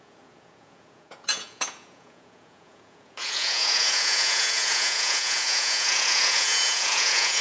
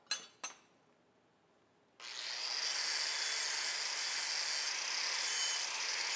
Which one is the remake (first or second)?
first